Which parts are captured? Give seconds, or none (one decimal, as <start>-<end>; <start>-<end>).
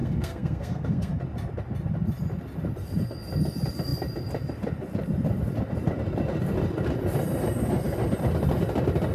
1.1-9.1